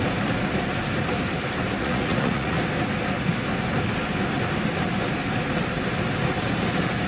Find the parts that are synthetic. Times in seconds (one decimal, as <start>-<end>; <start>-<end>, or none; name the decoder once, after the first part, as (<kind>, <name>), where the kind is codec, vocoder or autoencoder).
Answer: 1.8-2.6 (vocoder, Vocos)